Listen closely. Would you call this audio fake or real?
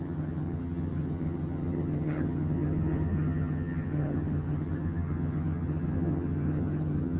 fake